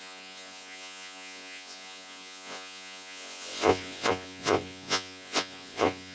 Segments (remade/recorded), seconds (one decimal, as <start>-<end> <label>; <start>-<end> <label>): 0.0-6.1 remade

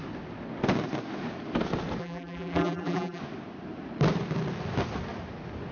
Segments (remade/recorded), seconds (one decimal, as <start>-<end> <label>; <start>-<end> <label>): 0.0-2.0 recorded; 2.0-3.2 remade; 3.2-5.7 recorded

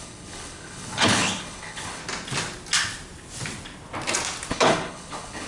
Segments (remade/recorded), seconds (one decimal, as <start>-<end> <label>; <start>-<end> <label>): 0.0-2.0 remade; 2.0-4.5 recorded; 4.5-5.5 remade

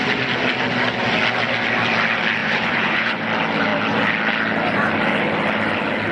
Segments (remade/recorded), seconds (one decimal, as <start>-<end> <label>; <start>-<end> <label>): 0.0-2.4 recorded; 2.4-3.2 remade; 3.2-6.1 recorded